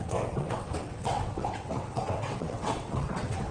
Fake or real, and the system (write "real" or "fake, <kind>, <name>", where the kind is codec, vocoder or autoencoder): fake, vocoder, WaveNeXt